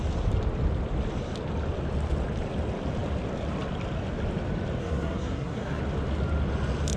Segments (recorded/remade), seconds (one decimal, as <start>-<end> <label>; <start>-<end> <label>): 0.0-4.8 recorded; 4.8-5.8 remade; 5.8-7.0 recorded